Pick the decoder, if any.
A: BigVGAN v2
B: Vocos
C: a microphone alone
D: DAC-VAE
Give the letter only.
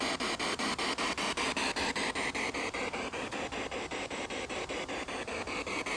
C